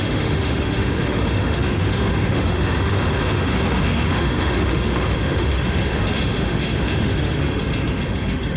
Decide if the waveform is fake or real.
fake